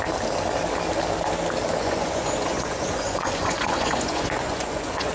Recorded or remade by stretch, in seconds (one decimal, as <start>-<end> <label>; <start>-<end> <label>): 0.0-1.8 recorded; 1.8-5.1 remade